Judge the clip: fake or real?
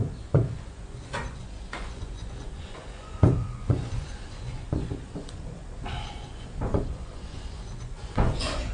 fake